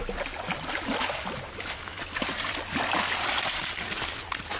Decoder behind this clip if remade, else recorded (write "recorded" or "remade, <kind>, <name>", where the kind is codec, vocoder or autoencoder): recorded